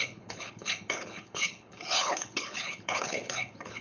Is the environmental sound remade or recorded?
remade